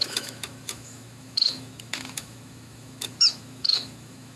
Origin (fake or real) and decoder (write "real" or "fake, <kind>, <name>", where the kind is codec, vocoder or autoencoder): fake, autoencoder, DAC-VAE